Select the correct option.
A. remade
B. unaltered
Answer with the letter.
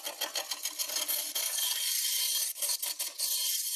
B